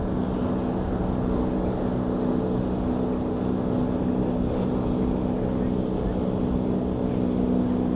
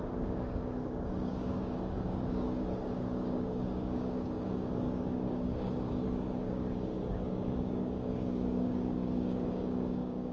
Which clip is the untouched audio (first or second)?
first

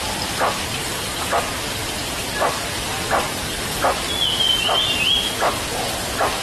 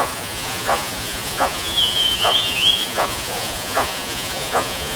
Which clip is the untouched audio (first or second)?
first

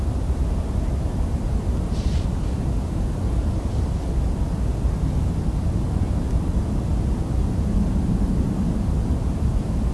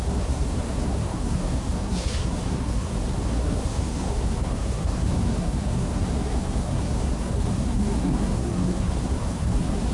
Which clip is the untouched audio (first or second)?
first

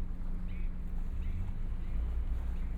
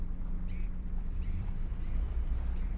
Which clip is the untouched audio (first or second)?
first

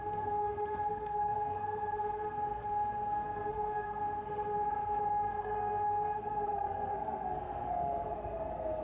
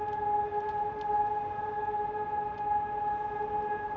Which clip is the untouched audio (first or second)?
second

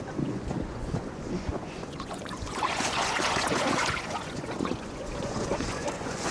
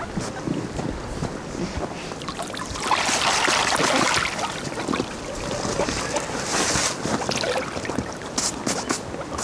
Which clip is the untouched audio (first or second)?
second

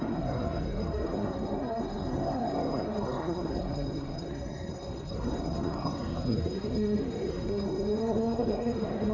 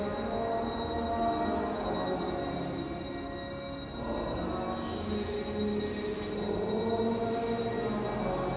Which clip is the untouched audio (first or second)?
second